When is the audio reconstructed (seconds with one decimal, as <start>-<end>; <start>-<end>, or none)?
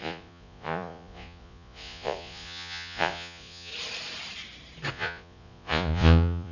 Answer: 0.0-3.7; 4.9-6.5